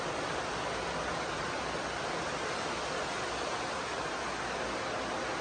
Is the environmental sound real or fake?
real